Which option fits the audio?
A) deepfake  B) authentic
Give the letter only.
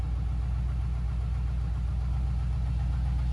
B